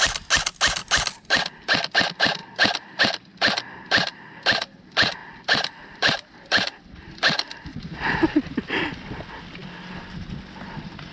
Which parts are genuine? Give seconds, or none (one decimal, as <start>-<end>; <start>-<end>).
0.0-0.8; 1.5-2.4; 3.0-5.2; 8.8-11.1